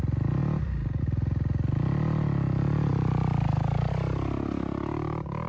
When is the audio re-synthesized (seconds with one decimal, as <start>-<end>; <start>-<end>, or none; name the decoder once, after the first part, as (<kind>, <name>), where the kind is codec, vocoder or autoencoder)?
2.9-3.9 (vocoder, BigVGAN v2)